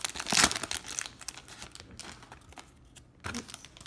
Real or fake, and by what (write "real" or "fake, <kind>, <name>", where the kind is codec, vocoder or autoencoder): real